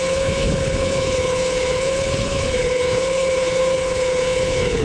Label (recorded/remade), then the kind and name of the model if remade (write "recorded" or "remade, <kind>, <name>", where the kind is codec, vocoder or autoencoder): remade, codec, HILCodec